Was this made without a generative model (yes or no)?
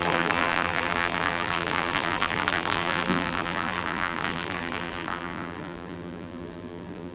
no